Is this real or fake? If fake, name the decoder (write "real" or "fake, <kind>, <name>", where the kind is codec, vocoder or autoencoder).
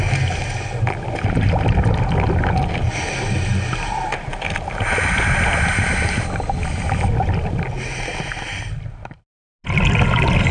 real